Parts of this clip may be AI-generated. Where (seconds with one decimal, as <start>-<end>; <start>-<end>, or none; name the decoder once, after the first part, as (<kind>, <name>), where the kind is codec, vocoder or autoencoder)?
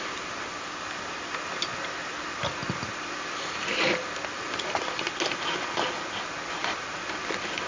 none